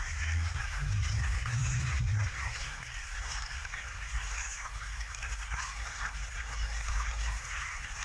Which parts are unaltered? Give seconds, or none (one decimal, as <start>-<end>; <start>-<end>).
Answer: none

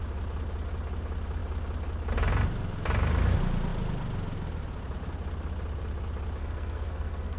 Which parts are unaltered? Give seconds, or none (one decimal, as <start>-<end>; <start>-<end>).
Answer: 0.0-6.4

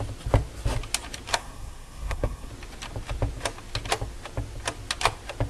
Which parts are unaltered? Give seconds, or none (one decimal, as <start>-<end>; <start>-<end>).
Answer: 0.0-1.3; 2.5-5.5

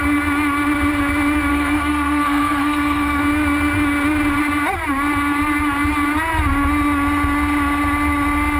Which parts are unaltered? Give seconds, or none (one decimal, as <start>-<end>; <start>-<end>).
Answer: 0.0-1.5; 3.2-8.6

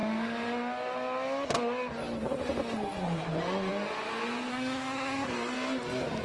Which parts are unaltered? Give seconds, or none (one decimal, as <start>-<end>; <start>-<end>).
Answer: 0.0-4.5; 5.3-6.2

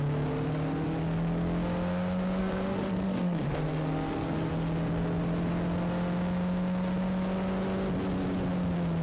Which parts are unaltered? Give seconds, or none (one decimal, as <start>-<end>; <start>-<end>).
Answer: 0.0-2.4; 4.5-9.0